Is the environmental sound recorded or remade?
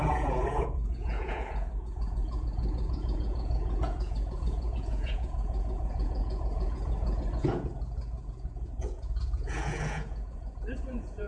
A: remade